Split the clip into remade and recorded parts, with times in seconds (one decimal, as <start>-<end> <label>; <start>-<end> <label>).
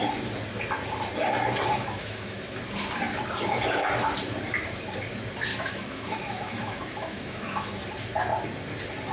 0.0-1.7 recorded; 1.7-2.4 remade; 2.4-5.5 recorded; 5.5-7.8 remade; 7.8-9.1 recorded